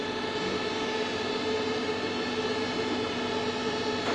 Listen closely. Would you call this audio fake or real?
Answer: real